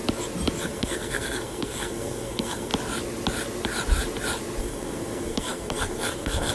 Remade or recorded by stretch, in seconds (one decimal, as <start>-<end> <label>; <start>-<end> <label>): 0.0-0.6 recorded; 0.6-2.7 remade; 2.7-4.6 recorded; 4.6-6.5 remade